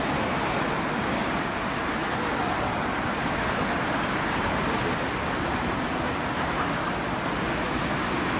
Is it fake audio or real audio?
real